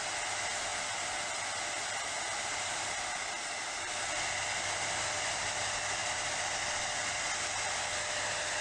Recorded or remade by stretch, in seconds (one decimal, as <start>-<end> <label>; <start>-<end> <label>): 0.0-8.6 recorded